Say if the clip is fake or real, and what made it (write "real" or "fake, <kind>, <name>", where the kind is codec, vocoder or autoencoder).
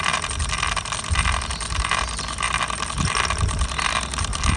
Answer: real